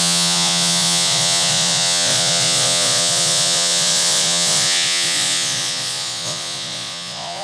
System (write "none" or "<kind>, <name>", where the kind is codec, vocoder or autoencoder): vocoder, Vocos